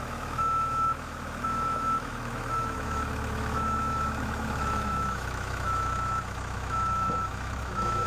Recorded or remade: remade